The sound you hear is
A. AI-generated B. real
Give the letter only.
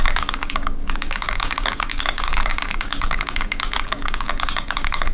A